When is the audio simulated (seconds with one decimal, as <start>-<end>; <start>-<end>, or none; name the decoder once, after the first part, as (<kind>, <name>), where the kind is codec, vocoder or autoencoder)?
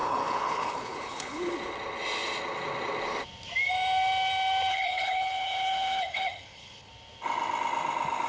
0.0-1.5 (codec, HILCodec); 4.7-6.9